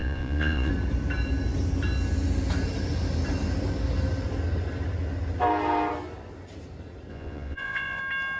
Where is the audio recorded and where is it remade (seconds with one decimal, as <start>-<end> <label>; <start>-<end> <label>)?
0.0-0.7 remade; 0.7-7.1 recorded; 7.1-8.0 remade; 8.0-8.4 recorded